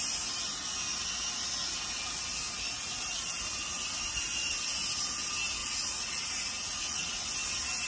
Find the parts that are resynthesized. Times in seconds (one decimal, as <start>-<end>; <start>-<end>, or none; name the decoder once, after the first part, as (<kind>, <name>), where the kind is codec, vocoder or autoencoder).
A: 5.6-7.3 (vocoder, Vocos)